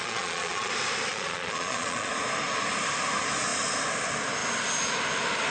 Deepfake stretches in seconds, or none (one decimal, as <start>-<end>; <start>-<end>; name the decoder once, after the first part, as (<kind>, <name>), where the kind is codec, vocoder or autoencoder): 0.0-0.7 (vocoder, Vocos); 1.1-2.1